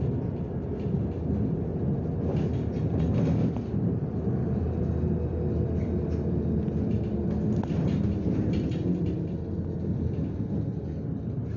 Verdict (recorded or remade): recorded